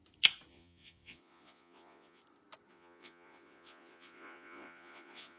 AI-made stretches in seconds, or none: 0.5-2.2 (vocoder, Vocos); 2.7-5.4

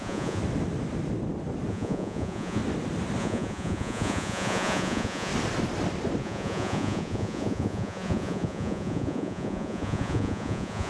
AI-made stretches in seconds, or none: 0.0-0.4 (vocoder, Vocos); 1.7-2.6; 3.2-5.3; 6.2-10.9

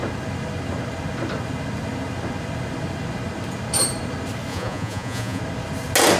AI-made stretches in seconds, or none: 4.5-5.4 (vocoder, Vocos)